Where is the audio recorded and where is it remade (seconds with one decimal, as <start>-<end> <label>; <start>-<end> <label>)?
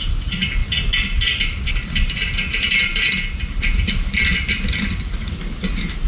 0.0-6.1 recorded